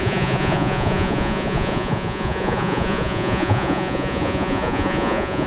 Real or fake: fake